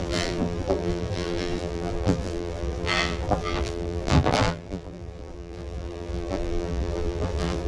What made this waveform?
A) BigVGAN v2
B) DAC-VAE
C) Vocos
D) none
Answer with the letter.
A